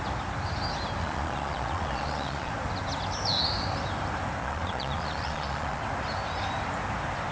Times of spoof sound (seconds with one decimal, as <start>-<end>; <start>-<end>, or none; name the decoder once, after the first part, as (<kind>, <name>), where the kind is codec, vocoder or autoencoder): 1.0-2.5 (vocoder, Vocos); 4.4-5.8